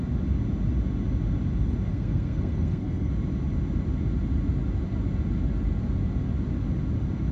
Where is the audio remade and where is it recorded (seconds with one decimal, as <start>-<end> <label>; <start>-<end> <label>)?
0.0-1.9 recorded; 1.9-3.1 remade; 3.1-7.3 recorded